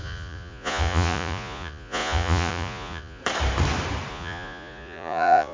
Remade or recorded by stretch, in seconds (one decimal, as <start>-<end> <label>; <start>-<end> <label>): 0.0-3.2 remade; 3.2-4.1 recorded; 4.1-5.5 remade